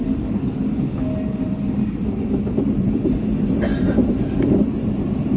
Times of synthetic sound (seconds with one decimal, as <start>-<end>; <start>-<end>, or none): 1.0-3.7; 4.5-5.4